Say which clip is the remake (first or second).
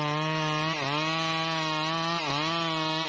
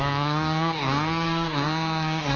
second